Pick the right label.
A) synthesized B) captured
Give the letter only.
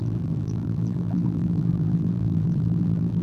A